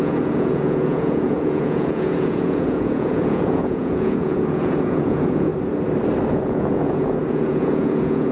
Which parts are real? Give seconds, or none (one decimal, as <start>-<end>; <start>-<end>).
5.5-6.3